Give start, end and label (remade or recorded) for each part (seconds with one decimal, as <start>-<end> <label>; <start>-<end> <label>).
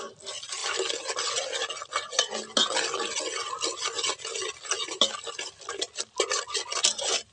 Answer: 0.0-7.3 recorded